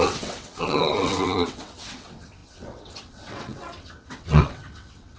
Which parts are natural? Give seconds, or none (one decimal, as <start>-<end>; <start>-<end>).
none